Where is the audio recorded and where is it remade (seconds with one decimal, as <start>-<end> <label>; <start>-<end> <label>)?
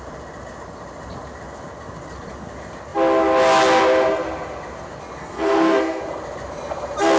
0.0-5.2 recorded; 5.2-6.0 remade; 6.0-7.2 recorded